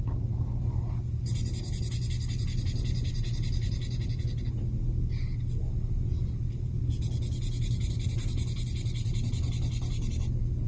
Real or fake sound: real